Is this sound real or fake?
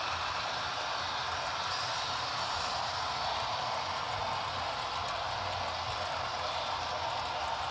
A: real